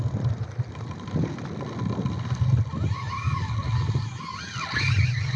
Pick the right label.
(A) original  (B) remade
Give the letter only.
A